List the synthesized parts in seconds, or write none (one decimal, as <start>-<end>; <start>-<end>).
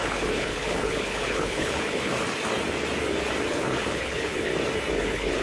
0.0-2.1; 3.5-4.5; 5.0-5.4